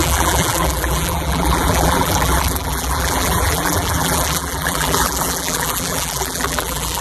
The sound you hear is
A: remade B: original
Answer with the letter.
A